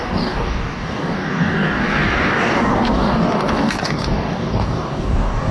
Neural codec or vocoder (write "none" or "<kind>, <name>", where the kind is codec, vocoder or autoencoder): codec, DAC